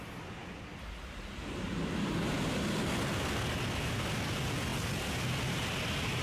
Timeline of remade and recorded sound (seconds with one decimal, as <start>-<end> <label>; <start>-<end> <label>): 0.0-6.2 recorded